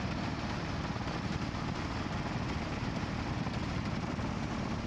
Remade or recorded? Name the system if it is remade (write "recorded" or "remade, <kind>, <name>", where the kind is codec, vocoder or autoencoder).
remade, vocoder, BigVGAN v2